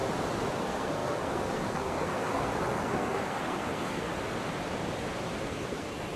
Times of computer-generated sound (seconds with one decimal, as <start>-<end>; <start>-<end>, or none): 0.6-4.1; 5.4-6.2